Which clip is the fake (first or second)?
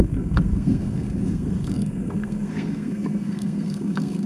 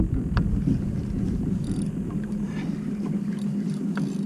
first